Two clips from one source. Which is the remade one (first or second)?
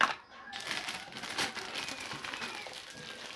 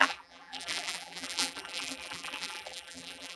second